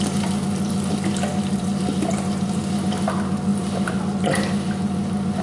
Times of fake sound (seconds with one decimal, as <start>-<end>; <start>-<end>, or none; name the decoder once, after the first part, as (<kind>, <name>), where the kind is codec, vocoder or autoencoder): 1.3-2.6 (vocoder, BigVGAN v2); 3.5-4.0